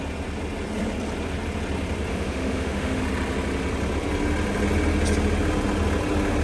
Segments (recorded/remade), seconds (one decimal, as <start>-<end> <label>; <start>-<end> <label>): 0.0-2.1 recorded; 2.1-3.0 remade; 3.0-6.4 recorded